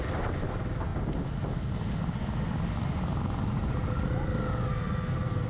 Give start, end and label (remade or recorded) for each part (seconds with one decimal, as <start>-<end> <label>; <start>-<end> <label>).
0.0-4.7 recorded; 4.7-5.5 remade